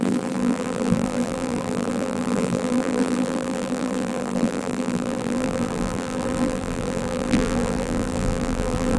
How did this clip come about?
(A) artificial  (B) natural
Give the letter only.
A